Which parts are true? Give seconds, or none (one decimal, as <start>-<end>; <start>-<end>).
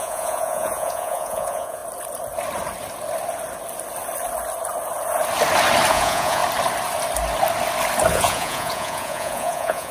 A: 1.8-5.9; 6.4-8.1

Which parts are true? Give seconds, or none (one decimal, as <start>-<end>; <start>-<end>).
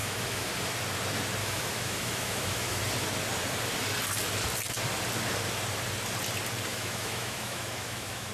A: 0.5-1.4; 2.8-6.7